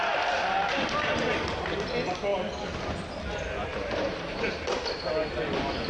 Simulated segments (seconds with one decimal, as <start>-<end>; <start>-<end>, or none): 3.7-4.5